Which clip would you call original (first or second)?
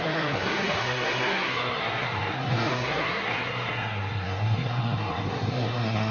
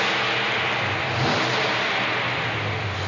second